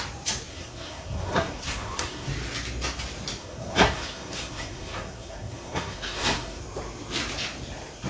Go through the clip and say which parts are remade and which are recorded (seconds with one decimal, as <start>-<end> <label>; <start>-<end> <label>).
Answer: 0.0-0.5 recorded; 0.5-2.3 remade; 2.3-3.4 recorded; 3.4-6.6 remade; 6.6-8.1 recorded